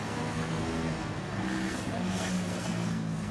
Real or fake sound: fake